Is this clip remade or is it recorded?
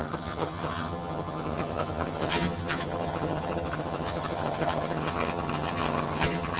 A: remade